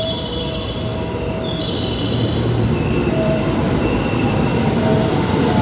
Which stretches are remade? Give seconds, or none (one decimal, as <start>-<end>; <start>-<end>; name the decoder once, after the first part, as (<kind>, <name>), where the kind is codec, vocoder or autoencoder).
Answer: 0.0-0.9 (vocoder, BigVGAN v2); 3.1-4.5; 5.1-5.6